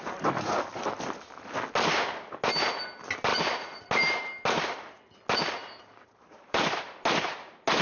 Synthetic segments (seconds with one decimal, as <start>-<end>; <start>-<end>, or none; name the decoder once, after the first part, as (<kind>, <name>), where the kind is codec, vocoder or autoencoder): 3.3-4.3 (vocoder, BigVGAN v2); 5.6-6.8